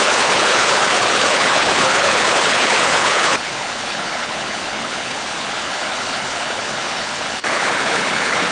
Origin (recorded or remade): remade